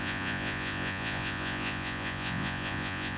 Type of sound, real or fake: fake